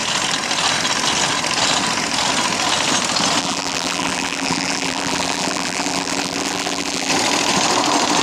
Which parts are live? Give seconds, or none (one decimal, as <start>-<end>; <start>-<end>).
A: 0.0-3.4; 7.1-8.2